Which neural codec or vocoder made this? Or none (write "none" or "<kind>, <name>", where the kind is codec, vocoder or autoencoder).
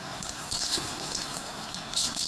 codec, SNAC